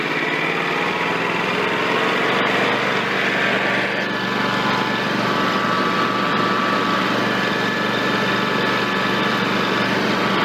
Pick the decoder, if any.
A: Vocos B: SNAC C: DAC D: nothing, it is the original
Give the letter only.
D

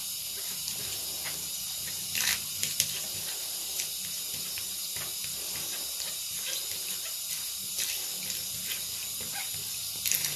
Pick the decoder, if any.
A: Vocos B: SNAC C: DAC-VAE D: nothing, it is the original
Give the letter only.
D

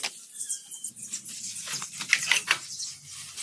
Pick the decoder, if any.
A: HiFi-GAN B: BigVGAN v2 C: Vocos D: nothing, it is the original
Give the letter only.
D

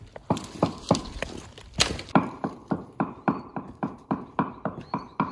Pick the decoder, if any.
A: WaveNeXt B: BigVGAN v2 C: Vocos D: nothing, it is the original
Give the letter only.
D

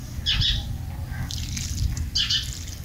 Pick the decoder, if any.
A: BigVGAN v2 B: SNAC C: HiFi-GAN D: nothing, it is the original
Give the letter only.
D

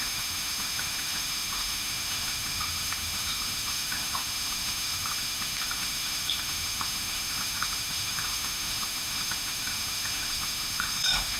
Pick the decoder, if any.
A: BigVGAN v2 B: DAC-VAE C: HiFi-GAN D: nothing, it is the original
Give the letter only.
B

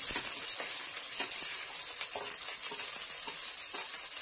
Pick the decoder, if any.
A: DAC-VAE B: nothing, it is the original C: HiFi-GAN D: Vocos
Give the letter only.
B